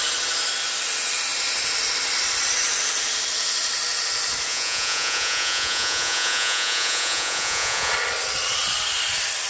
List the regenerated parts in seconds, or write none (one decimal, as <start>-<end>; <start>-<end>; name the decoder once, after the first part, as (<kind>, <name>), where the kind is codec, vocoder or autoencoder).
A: 4.5-7.9 (vocoder, Vocos)